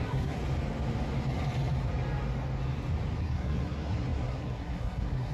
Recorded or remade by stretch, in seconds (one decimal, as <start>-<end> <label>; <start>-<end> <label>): 0.0-0.4 remade; 0.4-3.2 recorded; 3.2-5.3 remade